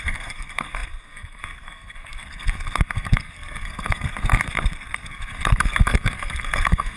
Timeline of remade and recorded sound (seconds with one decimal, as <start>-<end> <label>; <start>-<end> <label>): 0.0-7.0 remade